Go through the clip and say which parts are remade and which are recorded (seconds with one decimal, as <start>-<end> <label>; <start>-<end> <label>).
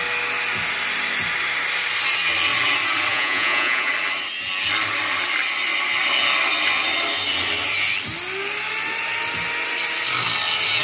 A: 0.0-3.1 recorded; 3.1-3.9 remade; 3.9-10.8 recorded